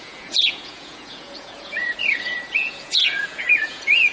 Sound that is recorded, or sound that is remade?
remade